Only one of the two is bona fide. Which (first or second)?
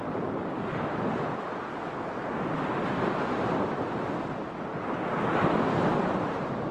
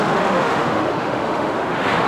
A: first